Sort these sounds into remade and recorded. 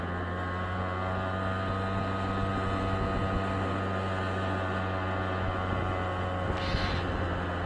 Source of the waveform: recorded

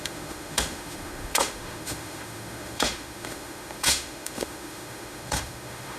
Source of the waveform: remade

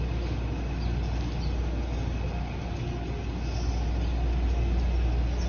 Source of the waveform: recorded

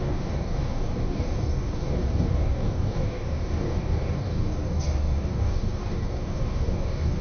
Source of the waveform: remade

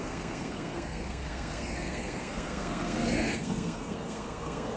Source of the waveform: remade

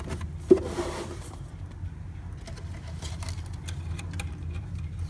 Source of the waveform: recorded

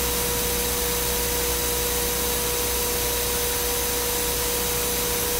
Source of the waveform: recorded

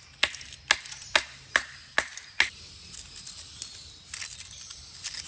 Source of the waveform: recorded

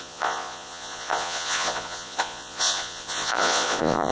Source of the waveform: remade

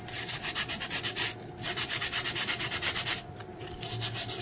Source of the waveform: recorded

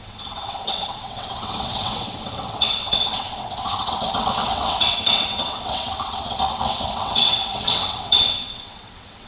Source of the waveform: remade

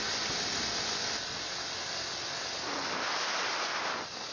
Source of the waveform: recorded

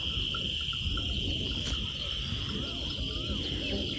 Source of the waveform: recorded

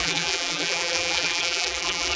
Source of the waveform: remade